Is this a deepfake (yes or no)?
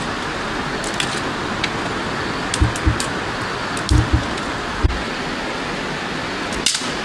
no